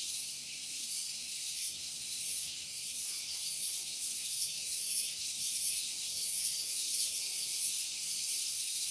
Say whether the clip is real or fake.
fake